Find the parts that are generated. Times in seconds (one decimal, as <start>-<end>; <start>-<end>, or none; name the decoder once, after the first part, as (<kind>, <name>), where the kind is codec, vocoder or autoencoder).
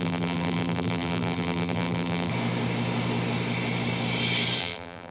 0.0-2.3 (vocoder, BigVGAN v2); 4.6-5.1